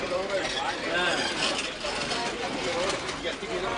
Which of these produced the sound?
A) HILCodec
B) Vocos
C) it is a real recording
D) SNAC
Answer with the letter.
C